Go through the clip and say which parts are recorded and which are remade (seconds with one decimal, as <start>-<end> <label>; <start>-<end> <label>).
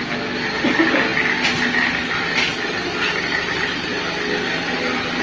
0.0-5.2 recorded